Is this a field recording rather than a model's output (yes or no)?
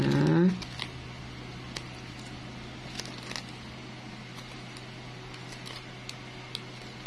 yes